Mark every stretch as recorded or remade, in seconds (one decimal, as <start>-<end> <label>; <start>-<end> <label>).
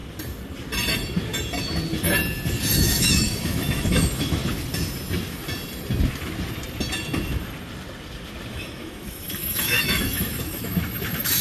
0.0-2.7 recorded; 2.7-4.4 remade; 4.4-8.5 recorded; 8.5-11.4 remade